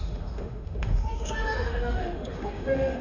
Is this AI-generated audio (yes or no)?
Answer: yes